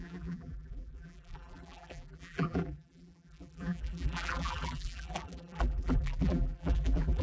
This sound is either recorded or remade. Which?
remade